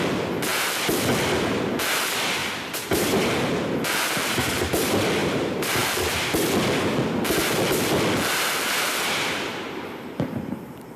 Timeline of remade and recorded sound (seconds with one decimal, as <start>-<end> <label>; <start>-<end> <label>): 0.0-2.4 recorded; 2.4-3.3 remade; 3.3-5.2 recorded; 5.2-5.8 remade; 5.8-9.5 recorded; 9.5-10.6 remade; 10.6-11.0 recorded

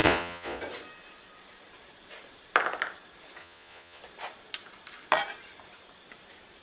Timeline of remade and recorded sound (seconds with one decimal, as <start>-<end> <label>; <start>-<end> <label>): 0.0-0.6 remade; 0.6-3.4 recorded; 3.4-4.0 remade; 4.0-6.6 recorded

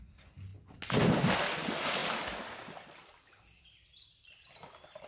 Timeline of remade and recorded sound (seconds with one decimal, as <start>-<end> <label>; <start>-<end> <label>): 0.0-5.1 recorded

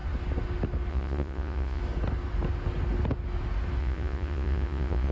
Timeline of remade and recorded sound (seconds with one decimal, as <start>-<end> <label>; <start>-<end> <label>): 0.0-0.9 recorded; 0.9-1.8 remade; 1.8-3.8 recorded; 3.8-5.1 remade

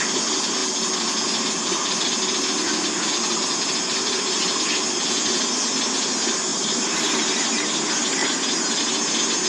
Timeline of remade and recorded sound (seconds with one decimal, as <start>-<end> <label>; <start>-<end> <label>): 0.0-6.5 recorded; 6.5-7.1 remade; 7.1-9.5 recorded

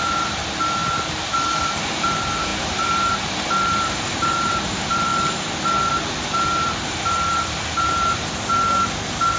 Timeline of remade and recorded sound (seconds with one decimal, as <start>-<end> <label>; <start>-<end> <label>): 0.0-0.8 remade; 0.8-1.6 recorded; 1.6-5.1 remade; 5.1-5.9 recorded; 5.9-8.2 remade; 8.2-9.4 recorded